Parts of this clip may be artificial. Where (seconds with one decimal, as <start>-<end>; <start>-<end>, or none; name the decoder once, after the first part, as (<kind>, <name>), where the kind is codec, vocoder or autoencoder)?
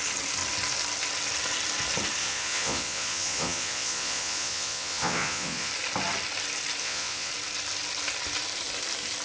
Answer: 2.2-5.7 (vocoder, Vocos); 6.8-7.3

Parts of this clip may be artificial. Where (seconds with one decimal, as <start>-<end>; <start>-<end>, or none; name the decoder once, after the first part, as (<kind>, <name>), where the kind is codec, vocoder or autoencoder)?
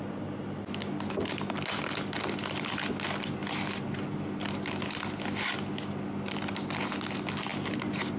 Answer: none